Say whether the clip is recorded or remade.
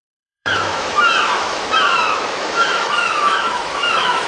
remade